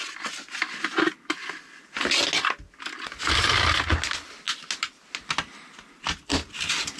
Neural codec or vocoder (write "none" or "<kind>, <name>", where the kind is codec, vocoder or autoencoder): none